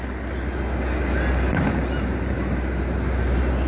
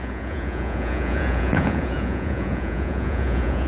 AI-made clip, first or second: second